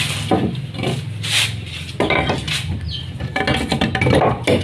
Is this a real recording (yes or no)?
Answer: yes